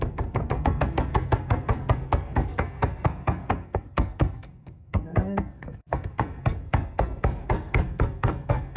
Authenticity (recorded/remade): remade